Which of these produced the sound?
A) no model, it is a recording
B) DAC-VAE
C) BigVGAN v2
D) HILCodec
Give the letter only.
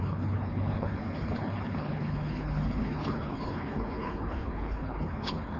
D